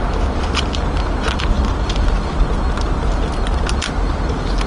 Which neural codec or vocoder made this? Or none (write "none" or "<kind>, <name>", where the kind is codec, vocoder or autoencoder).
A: none